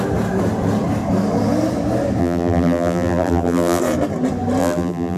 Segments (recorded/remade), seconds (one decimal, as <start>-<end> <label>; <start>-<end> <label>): 0.0-2.2 recorded; 2.2-3.8 remade; 3.8-4.6 recorded; 4.6-5.2 remade

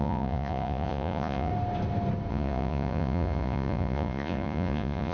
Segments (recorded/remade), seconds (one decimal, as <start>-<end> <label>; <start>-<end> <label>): 0.0-1.5 remade; 1.5-2.3 recorded; 2.3-5.1 remade